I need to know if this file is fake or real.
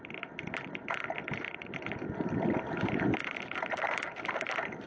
real